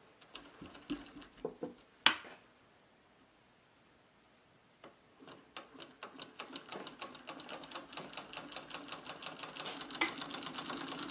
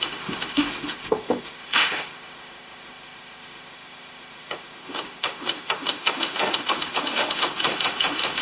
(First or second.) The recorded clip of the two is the first